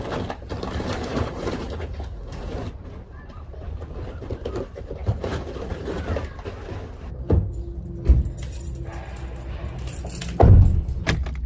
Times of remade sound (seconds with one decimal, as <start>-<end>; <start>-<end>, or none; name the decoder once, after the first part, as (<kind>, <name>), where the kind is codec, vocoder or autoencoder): 1.1-2.5 (vocoder, Vocos); 5.0-6.1